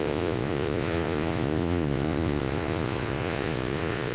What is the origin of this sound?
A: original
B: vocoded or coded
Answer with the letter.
B